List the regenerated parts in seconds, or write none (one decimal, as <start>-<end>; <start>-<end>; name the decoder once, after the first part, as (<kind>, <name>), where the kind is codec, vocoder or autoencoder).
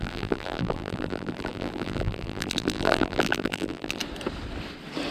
0.0-4.0 (vocoder, BigVGAN v2)